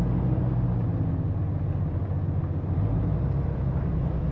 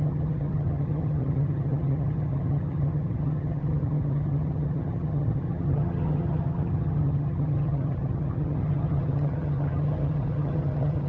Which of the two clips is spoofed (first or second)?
second